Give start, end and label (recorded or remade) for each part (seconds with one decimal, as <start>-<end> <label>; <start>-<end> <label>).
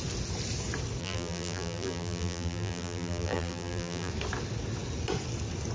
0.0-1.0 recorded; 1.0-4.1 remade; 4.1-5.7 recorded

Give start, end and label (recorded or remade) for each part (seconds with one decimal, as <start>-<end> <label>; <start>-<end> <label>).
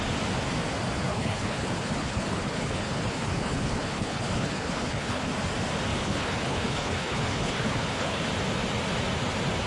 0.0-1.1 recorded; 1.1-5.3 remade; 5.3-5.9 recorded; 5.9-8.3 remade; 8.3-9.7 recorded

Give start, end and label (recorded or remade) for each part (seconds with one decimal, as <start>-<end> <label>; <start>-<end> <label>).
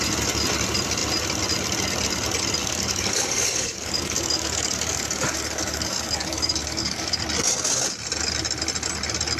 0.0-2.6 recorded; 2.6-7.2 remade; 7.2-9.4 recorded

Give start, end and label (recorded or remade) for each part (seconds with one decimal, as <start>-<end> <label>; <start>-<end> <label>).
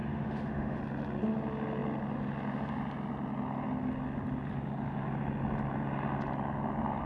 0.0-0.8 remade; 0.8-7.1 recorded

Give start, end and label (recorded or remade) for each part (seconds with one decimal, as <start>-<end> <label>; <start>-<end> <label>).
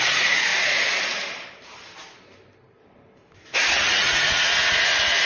0.0-0.5 remade; 0.5-3.7 recorded; 3.7-5.3 remade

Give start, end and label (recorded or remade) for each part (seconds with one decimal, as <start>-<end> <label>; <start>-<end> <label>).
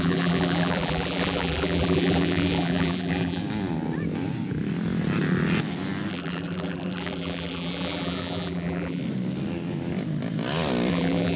0.0-3.4 remade; 3.4-6.1 recorded; 6.1-9.0 remade; 9.0-10.9 recorded; 10.9-11.4 remade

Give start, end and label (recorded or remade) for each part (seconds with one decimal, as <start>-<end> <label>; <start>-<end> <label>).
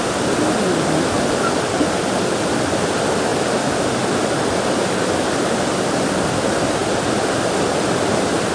0.0-8.5 recorded